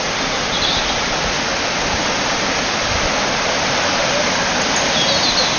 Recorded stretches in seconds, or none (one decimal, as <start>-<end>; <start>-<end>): 0.0-5.6